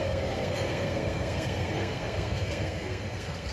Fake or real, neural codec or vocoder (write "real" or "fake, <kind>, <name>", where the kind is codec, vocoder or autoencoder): fake, codec, SNAC